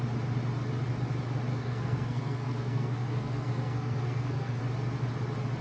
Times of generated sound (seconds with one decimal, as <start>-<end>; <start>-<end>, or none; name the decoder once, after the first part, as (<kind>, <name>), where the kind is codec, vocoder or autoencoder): 1.5-4.6 (codec, SNAC)